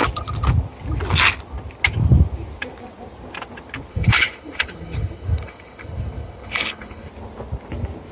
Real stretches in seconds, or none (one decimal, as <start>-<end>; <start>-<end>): 0.0-3.9; 7.1-8.1